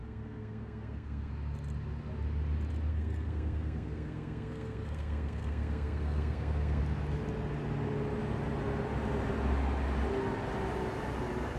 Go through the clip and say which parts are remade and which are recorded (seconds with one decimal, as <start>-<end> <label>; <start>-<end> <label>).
0.0-1.3 remade; 1.3-2.9 recorded; 2.9-6.8 remade; 6.8-11.6 recorded